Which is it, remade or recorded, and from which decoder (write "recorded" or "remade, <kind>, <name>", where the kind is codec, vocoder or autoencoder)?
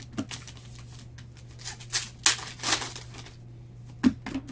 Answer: recorded